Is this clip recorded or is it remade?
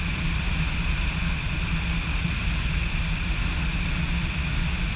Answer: recorded